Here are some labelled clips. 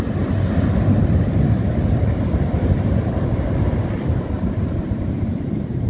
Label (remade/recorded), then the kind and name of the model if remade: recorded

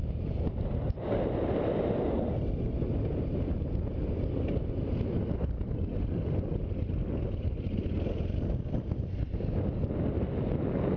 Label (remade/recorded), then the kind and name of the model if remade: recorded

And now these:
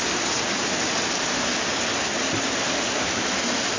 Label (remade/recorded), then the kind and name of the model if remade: recorded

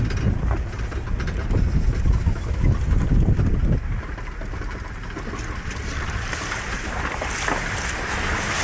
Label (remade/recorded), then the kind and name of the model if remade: recorded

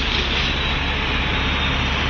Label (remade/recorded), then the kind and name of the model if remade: recorded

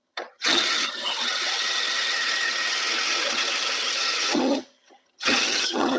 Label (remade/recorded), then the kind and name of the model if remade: remade, vocoder, HiFi-GAN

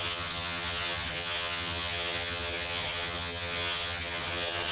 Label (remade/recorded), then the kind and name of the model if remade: remade, vocoder, HiFi-GAN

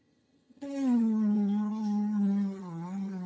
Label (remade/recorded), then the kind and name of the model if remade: remade, vocoder, HiFi-GAN